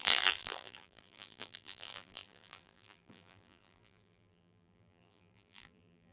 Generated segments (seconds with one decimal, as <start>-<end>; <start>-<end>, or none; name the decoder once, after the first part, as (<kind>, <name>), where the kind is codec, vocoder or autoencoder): 0.0-6.1 (vocoder, BigVGAN v2)

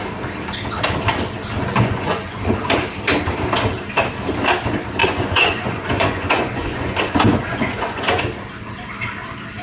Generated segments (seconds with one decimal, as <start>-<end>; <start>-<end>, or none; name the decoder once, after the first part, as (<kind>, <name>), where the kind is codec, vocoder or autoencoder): 1.7-2.4 (vocoder, Vocos); 5.0-8.2